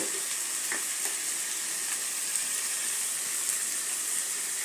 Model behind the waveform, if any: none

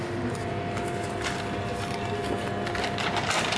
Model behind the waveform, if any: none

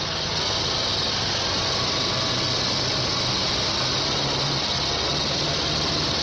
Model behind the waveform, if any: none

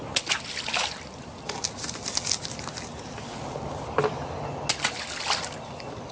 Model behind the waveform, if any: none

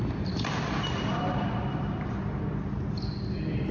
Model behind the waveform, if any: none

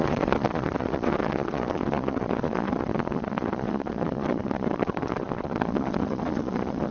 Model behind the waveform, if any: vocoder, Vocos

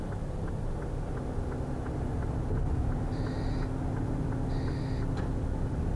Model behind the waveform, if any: none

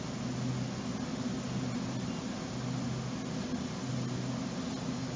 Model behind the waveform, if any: none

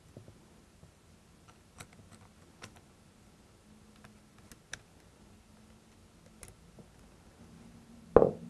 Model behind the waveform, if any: none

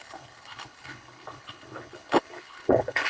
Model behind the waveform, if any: codec, HILCodec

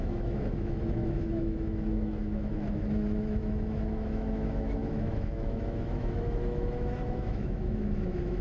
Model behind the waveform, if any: autoencoder, DAC-VAE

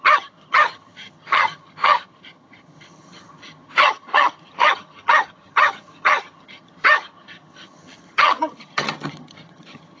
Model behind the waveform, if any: vocoder, HiFi-GAN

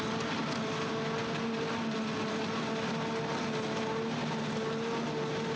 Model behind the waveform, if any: none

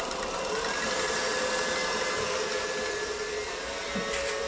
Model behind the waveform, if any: none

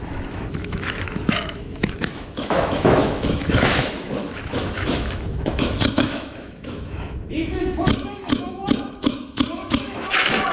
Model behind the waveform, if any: autoencoder, DAC-VAE